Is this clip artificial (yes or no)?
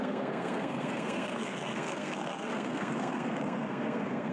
yes